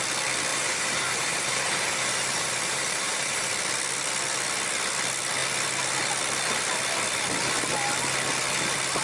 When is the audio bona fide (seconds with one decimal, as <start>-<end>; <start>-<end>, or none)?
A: 0.0-0.5; 3.5-9.0